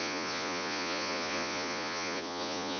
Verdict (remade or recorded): remade